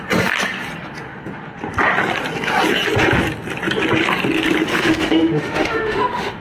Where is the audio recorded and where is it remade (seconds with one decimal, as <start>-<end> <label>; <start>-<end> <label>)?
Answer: 0.0-4.7 recorded; 4.7-6.4 remade